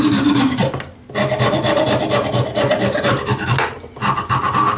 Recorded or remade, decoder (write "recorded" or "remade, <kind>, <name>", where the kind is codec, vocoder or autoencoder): recorded